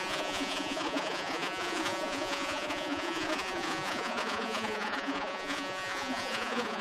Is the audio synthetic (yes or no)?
yes